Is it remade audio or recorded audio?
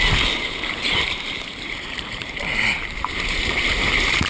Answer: remade